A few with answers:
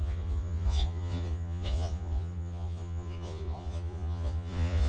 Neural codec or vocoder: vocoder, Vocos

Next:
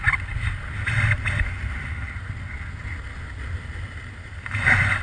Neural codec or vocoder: none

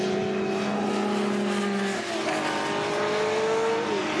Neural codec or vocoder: none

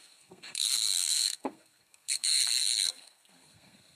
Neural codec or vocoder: codec, SNAC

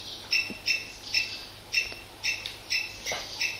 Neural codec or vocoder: none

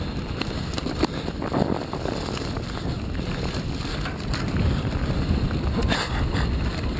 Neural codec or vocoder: vocoder, BigVGAN v2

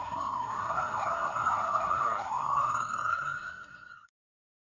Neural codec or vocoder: codec, SNAC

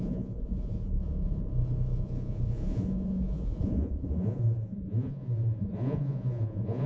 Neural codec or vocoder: vocoder, Vocos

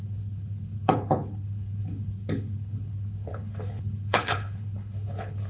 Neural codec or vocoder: codec, HILCodec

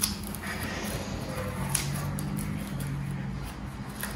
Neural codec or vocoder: none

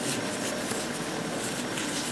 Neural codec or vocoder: none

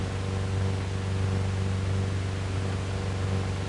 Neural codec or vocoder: none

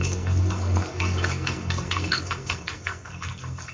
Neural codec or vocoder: codec, SNAC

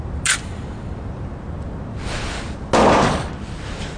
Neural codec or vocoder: none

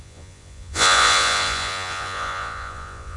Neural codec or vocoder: vocoder, Vocos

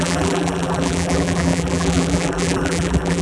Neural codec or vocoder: vocoder, BigVGAN v2